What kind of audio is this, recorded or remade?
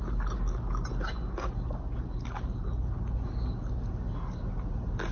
recorded